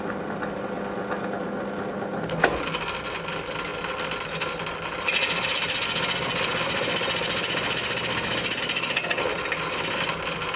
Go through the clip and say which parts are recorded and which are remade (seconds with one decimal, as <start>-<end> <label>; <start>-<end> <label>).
0.0-10.6 recorded